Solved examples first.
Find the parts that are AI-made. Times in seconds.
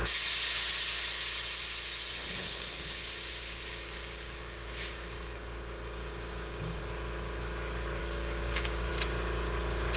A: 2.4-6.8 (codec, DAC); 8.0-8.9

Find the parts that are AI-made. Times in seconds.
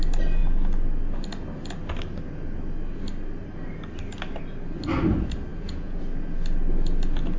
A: 5.5-6.0 (vocoder, Vocos)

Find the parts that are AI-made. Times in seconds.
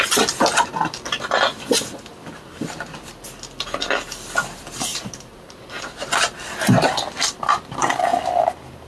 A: 4.9-5.6 (vocoder, BigVGAN v2)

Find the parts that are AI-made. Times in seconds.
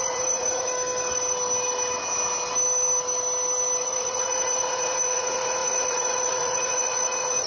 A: 0.0-0.7 (vocoder, Vocos); 3.8-7.5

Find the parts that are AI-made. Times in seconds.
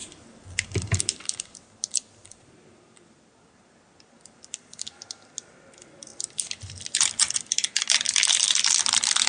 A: none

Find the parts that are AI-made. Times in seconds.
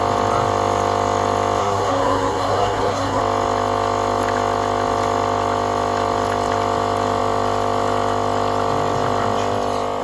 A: 1.6-3.2 (codec, SNAC)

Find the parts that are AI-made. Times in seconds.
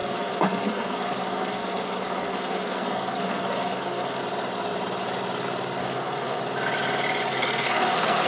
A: 0.0-4.2 (codec, SNAC); 5.8-6.4; 7.3-8.3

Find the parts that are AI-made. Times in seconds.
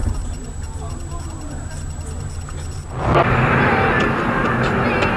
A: none